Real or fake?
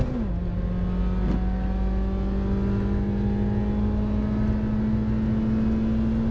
real